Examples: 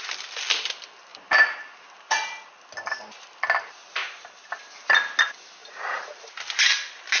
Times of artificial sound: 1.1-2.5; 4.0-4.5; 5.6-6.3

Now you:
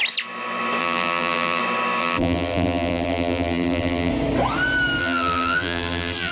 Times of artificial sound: 0.8-1.6; 2.0-4.1; 5.0-6.3

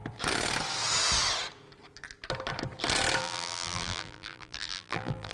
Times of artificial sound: 3.2-5.3

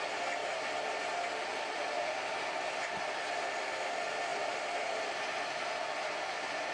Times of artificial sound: none

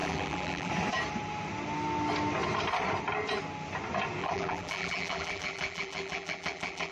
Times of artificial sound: 0.0-0.7; 4.2-6.9

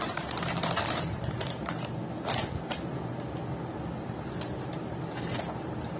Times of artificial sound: 0.0-2.0; 4.0-6.0

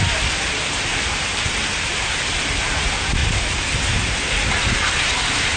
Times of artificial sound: 0.9-2.6; 3.2-5.6